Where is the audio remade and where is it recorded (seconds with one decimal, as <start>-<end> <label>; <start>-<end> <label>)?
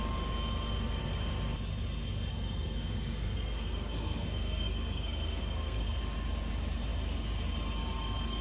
0.0-2.3 recorded; 2.3-6.0 remade; 6.0-8.4 recorded